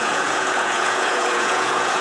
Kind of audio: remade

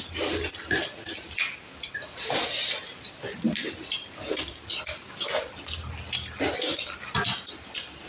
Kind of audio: recorded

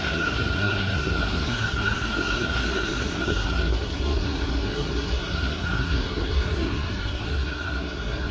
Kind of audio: remade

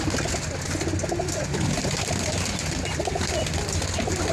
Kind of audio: recorded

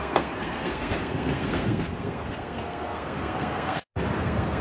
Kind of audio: remade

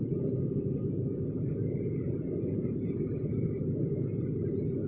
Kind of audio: recorded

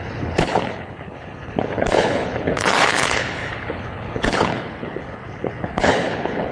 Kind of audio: remade